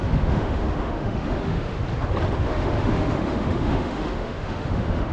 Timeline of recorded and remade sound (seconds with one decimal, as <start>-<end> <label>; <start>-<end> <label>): 0.0-1.8 remade; 1.8-2.4 recorded; 2.4-5.1 remade